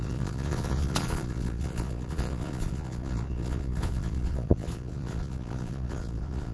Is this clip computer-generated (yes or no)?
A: yes